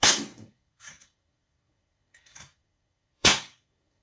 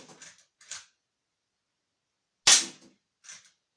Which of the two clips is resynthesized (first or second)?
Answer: first